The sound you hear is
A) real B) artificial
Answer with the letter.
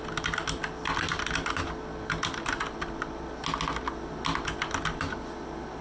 A